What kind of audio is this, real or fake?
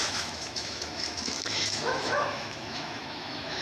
fake